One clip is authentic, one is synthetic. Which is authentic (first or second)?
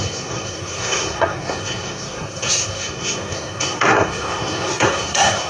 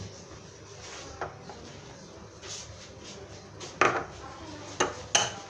second